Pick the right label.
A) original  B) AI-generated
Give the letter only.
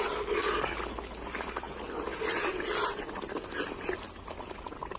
A